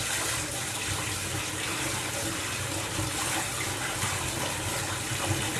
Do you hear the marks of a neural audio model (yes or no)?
no